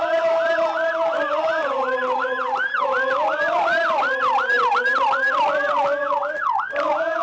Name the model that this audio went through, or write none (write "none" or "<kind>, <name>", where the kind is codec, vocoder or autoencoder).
none